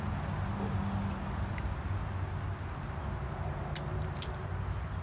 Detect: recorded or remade recorded